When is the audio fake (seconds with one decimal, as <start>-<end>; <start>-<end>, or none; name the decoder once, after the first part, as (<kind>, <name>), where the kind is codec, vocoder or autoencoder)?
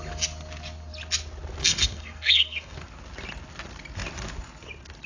1.6-2.7 (codec, SNAC)